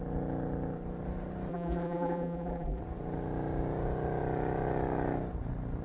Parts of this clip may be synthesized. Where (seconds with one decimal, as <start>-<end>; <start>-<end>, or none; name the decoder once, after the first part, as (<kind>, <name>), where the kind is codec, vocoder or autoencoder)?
1.5-2.8 (vocoder, BigVGAN v2)